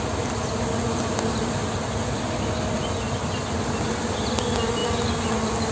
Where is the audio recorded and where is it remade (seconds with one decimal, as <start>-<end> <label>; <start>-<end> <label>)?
0.0-5.7 recorded